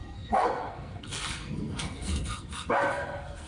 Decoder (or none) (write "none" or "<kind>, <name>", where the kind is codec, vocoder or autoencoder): codec, SNAC